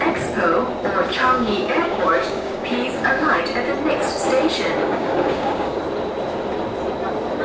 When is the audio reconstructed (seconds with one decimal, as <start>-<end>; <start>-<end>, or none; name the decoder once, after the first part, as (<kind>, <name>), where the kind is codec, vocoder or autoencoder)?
1.1-3.4 (codec, DAC); 4.8-5.8